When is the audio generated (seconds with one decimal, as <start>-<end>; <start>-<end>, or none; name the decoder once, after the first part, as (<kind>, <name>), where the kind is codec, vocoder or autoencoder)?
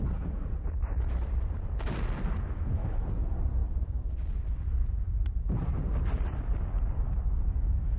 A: none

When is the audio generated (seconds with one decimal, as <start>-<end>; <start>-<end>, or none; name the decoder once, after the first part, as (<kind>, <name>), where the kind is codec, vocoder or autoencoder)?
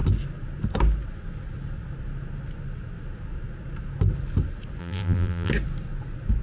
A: 4.8-5.5 (vocoder, BigVGAN v2)